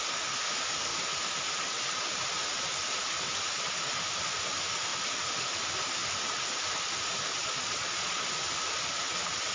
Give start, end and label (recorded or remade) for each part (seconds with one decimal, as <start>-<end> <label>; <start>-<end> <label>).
0.0-7.4 recorded; 7.4-8.4 remade; 8.4-9.5 recorded